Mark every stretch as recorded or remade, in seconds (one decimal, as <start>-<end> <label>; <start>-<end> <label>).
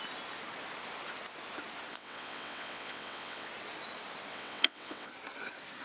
0.0-1.9 recorded; 1.9-3.5 remade; 3.5-4.3 recorded; 4.3-5.1 remade; 5.1-5.8 recorded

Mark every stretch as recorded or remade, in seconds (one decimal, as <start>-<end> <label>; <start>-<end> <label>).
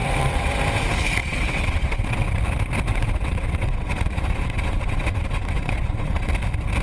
0.0-0.5 remade; 0.5-1.2 recorded; 1.2-2.4 remade; 2.4-2.9 recorded; 2.9-6.3 remade; 6.3-6.8 recorded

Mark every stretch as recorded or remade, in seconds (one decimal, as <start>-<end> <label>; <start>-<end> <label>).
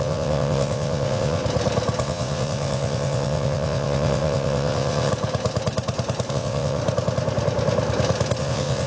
0.0-1.4 remade; 1.4-2.0 recorded; 2.0-5.1 remade; 5.1-6.3 recorded; 6.3-6.8 remade; 6.8-8.4 recorded; 8.4-8.9 remade